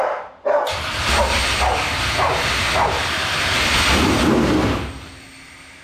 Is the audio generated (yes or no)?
no